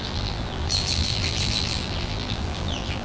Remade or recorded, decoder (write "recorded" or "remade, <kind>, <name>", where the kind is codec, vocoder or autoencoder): remade, vocoder, BigVGAN v2